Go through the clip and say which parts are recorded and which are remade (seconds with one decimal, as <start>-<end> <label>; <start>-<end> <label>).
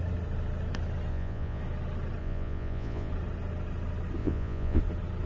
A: 0.0-1.1 recorded; 1.1-1.6 remade; 1.6-2.2 recorded; 2.2-3.1 remade; 3.1-4.2 recorded; 4.2-4.8 remade; 4.8-5.3 recorded